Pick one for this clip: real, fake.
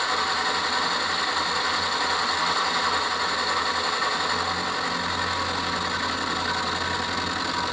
real